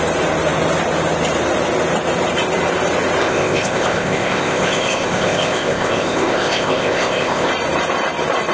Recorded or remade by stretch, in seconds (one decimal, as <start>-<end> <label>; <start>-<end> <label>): 0.0-3.2 recorded; 3.2-7.5 remade; 7.5-8.5 recorded